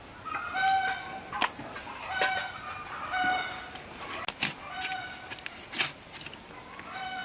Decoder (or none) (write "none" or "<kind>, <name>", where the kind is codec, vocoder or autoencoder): none